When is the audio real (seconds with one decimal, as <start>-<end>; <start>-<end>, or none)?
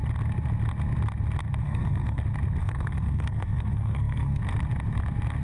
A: 0.0-1.6; 2.2-2.6; 4.4-5.4